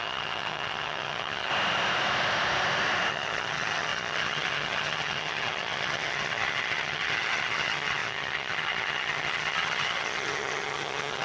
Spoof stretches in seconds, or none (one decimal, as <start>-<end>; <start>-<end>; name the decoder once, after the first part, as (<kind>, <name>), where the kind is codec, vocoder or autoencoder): 0.0-1.5 (vocoder, HiFi-GAN); 3.1-11.2